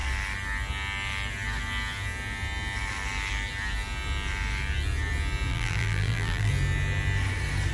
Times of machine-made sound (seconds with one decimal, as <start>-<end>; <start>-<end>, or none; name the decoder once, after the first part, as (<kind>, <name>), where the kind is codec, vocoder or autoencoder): 5.5-6.5 (vocoder, BigVGAN v2)